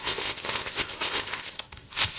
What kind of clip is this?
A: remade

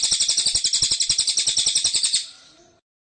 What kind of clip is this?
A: recorded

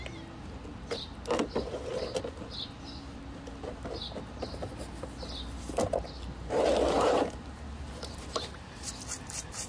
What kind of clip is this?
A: recorded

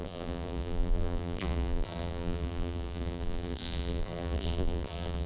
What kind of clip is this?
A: remade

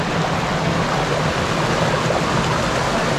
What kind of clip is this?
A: recorded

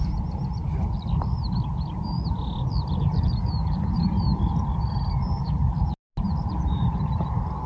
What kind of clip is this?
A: recorded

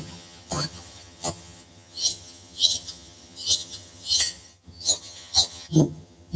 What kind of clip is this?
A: remade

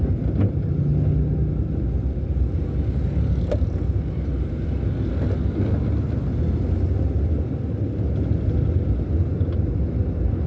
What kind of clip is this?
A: recorded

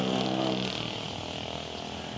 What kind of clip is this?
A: recorded